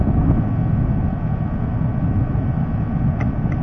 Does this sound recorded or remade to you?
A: recorded